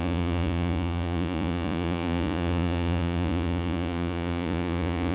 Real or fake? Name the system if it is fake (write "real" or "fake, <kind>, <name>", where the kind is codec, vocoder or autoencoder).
fake, vocoder, Vocos